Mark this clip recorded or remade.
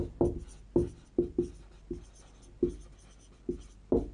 recorded